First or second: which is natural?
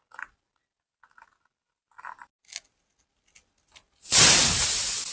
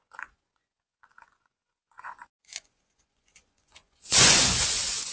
first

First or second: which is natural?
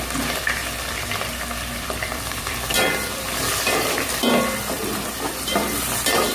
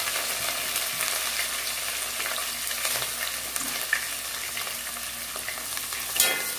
second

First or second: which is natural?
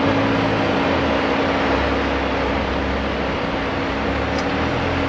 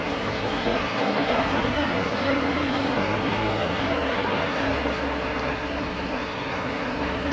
first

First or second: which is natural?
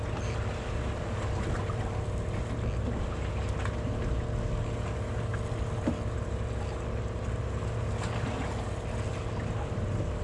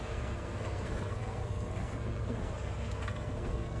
first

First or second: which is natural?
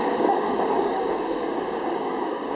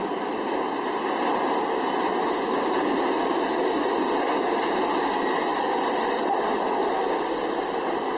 second